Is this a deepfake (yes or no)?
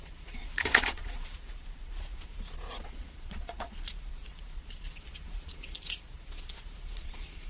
yes